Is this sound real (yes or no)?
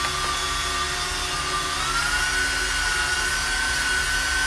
yes